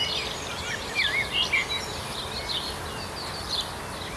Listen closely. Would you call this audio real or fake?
real